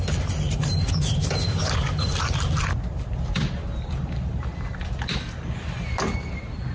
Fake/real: real